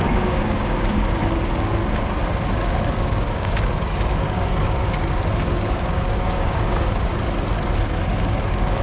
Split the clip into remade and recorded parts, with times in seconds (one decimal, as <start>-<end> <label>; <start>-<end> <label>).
0.0-1.8 remade; 1.8-2.6 recorded; 2.6-7.1 remade; 7.1-8.1 recorded; 8.1-8.8 remade